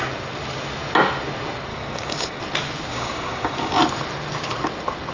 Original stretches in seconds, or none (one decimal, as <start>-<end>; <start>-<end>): 0.0-1.7; 2.4-2.9; 3.8-5.1